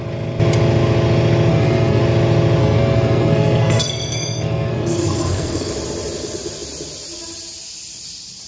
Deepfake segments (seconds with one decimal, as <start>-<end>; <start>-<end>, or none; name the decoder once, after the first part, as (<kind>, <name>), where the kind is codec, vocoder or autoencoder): 1.5-2.0 (codec, SNAC); 2.6-5.7

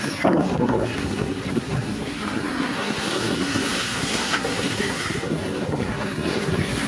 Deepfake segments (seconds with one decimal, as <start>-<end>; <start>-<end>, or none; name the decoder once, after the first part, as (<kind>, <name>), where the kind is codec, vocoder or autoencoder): 0.0-6.9 (codec, SNAC)